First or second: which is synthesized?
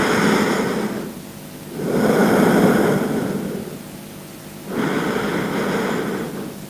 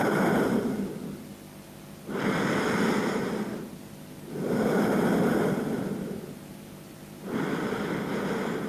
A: second